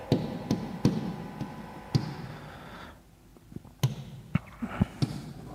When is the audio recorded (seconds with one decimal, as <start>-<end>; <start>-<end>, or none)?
0.0-5.5